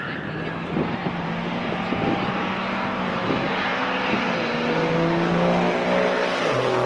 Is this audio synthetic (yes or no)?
no